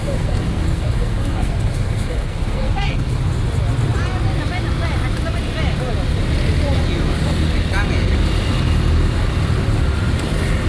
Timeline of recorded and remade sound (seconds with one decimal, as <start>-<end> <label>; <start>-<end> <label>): 0.0-3.2 remade; 3.2-10.7 recorded